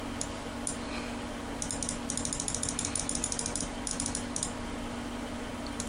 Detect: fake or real real